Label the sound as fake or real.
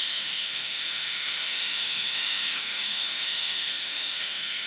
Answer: fake